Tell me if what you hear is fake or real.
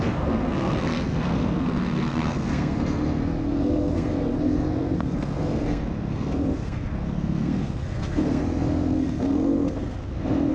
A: fake